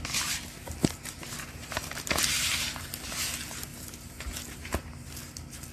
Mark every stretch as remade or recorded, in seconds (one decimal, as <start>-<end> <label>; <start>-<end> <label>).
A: 0.0-0.8 recorded; 0.8-2.9 remade; 2.9-3.7 recorded; 3.7-4.3 remade; 4.3-5.7 recorded